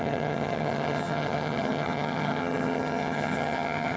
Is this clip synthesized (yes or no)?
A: yes